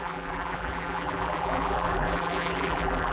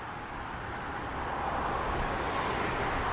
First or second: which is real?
second